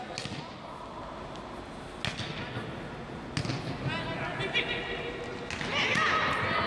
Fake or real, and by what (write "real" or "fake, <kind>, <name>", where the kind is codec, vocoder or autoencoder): real